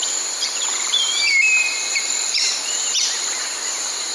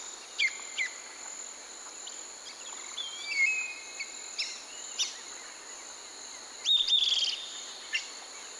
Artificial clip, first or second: first